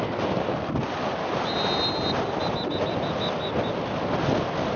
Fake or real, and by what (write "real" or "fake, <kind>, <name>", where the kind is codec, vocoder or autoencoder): real